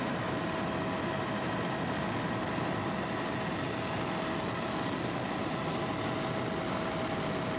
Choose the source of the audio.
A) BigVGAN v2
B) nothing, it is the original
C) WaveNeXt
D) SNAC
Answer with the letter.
B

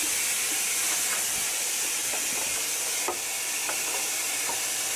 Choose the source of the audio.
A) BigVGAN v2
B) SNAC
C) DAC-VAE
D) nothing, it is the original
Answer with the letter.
D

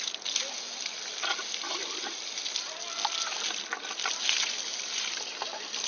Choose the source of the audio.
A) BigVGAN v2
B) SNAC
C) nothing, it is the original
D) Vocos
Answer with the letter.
C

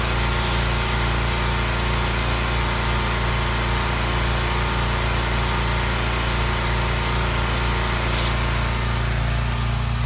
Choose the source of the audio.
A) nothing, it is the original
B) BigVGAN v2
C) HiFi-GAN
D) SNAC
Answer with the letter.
A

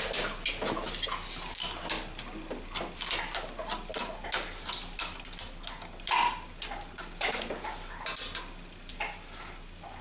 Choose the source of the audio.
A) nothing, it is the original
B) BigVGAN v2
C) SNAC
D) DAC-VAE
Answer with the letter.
A